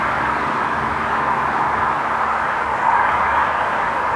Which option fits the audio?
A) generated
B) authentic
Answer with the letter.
A